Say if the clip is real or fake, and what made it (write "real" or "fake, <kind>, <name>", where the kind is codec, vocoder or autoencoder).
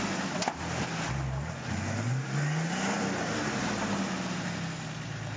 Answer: real